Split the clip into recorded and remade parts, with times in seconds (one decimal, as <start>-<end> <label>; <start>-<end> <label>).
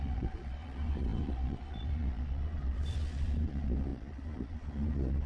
0.0-5.3 remade